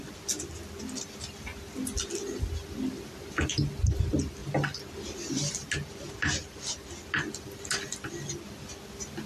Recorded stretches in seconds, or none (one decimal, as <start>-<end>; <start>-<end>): 0.0-9.3